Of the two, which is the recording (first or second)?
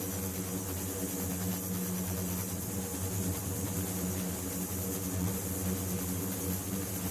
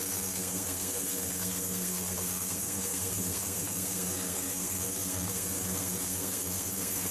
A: first